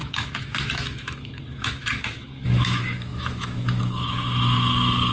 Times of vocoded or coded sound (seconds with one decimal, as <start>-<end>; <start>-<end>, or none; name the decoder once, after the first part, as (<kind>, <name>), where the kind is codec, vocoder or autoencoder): 0.0-5.1 (autoencoder, DAC-VAE)